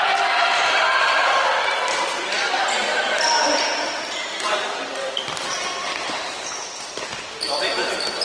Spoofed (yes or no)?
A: yes